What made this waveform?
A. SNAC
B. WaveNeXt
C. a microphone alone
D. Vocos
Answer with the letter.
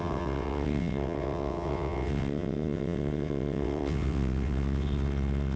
B